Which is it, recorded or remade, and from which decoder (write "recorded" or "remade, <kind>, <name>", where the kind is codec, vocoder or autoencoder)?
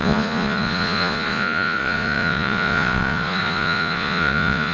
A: remade, vocoder, Vocos